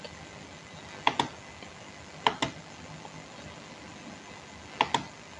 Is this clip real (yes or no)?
yes